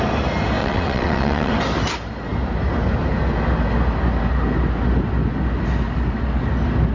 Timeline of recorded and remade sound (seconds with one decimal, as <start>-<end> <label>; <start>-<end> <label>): 0.0-0.6 recorded; 0.6-1.5 remade; 1.5-6.9 recorded